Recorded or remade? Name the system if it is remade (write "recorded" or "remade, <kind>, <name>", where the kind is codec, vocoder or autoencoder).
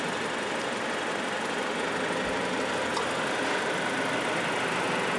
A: recorded